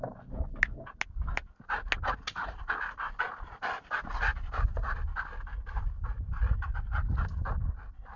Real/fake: real